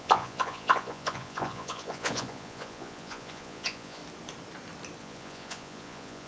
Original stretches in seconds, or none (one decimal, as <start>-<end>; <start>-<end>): 4.0-5.0